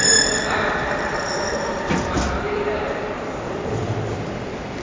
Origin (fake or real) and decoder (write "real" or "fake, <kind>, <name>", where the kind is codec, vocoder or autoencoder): fake, vocoder, BigVGAN v2